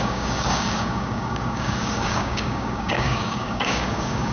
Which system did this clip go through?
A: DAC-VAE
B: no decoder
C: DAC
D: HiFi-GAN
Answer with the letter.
C